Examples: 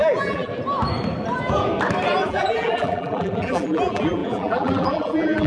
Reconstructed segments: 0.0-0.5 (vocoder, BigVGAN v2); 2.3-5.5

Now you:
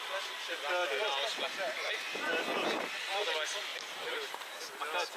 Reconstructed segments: 3.7-4.6 (vocoder, BigVGAN v2)

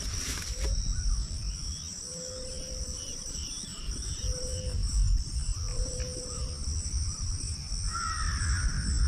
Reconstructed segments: 3.1-3.9 (vocoder, BigVGAN v2)

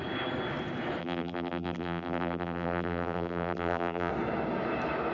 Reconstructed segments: 1.0-4.1 (vocoder, BigVGAN v2)

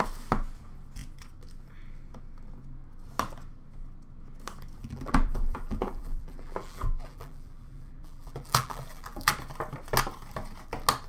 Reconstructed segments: 4.8-9.3 (vocoder, BigVGAN v2)

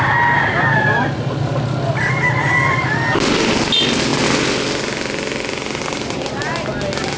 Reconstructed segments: none

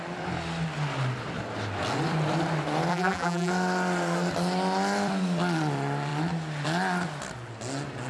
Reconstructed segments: 2.9-3.5 (vocoder, BigVGAN v2)